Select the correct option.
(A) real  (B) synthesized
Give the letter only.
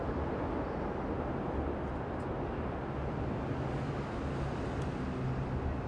A